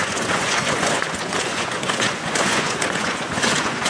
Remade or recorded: remade